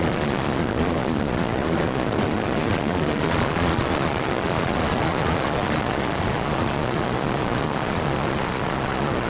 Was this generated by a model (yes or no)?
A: yes